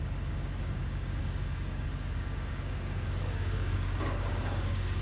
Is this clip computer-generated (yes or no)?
yes